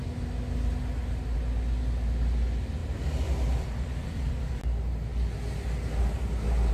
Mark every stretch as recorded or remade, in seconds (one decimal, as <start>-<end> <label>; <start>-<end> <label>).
0.0-2.8 recorded; 2.8-4.3 remade; 4.3-6.7 recorded